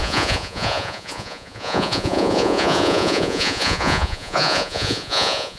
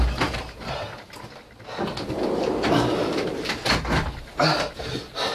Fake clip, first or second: first